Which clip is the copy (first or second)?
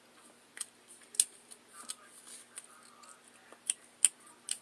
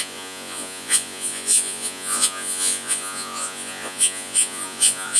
second